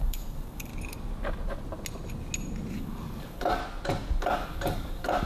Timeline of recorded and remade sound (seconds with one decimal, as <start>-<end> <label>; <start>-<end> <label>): 0.0-0.7 remade; 0.7-2.7 recorded; 2.7-3.6 remade; 3.6-4.2 recorded; 4.2-5.3 remade